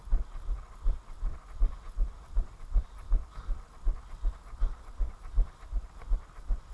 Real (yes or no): yes